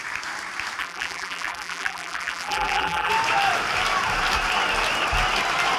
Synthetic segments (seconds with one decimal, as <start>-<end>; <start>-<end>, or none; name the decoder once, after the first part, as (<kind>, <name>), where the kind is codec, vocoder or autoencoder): 0.8-3.1 (vocoder, BigVGAN v2)